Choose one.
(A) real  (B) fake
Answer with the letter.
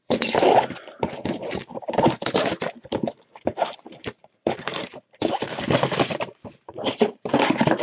B